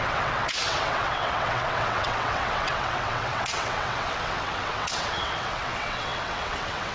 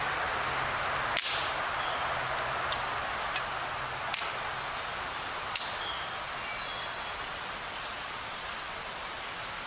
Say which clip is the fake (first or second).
first